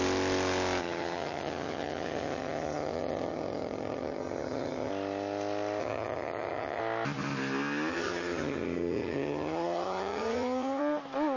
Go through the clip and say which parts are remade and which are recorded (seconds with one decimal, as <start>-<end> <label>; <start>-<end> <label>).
0.0-0.8 recorded; 0.8-4.9 remade; 4.9-5.8 recorded; 5.8-6.8 remade; 6.8-7.9 recorded; 7.9-10.8 remade; 10.8-11.4 recorded